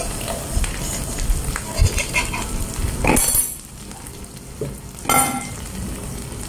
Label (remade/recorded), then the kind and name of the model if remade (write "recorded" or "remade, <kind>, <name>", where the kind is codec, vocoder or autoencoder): recorded